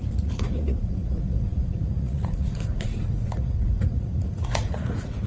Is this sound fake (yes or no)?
yes